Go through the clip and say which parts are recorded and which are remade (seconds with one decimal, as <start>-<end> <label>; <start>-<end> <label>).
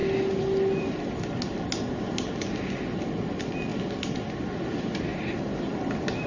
0.0-6.3 recorded